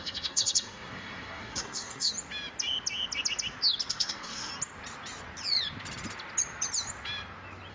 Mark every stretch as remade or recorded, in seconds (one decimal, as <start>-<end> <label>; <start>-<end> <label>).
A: 0.0-2.1 remade; 2.1-3.9 recorded; 3.9-4.5 remade; 4.5-7.7 recorded